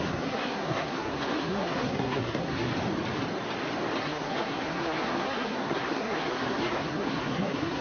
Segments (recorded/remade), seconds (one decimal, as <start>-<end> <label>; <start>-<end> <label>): 0.0-2.7 remade; 2.7-4.0 recorded; 4.0-7.8 remade